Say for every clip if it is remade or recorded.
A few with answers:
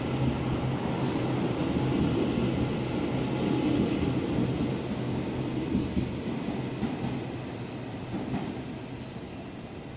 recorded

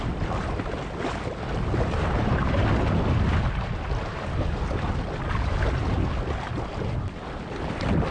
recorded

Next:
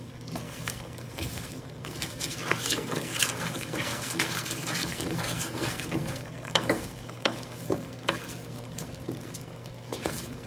remade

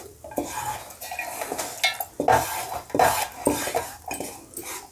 recorded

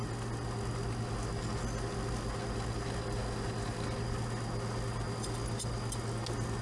recorded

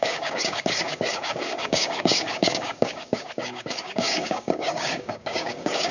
remade